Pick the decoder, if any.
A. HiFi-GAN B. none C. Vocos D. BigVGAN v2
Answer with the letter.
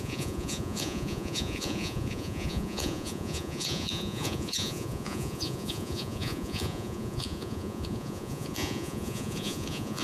C